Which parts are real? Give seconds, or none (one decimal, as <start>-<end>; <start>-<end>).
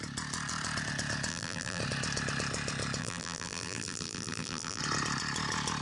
0.0-1.3; 1.8-3.0; 4.8-5.8